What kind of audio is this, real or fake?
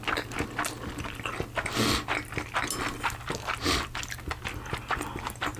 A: real